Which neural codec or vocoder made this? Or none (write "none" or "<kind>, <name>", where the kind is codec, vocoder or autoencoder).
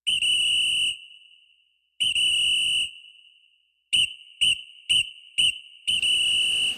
none